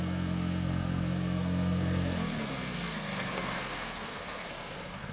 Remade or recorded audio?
remade